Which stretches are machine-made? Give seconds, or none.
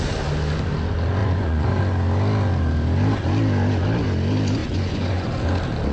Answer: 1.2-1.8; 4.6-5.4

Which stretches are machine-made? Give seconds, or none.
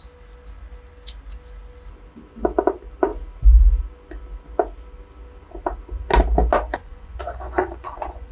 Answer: 6.8-8.3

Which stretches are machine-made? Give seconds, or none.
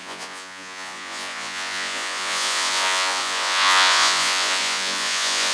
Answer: 0.0-5.5